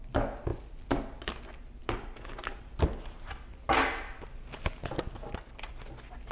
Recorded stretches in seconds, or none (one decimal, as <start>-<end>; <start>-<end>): 0.0-0.5; 1.2-6.3